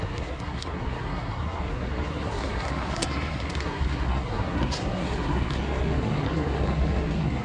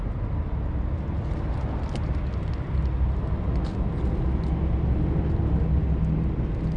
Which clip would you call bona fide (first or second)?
second